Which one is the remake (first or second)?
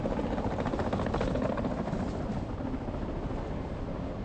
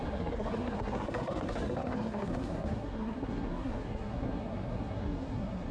second